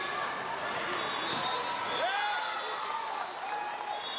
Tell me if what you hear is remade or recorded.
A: recorded